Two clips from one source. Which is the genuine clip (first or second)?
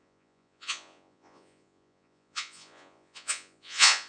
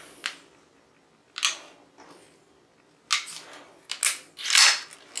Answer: second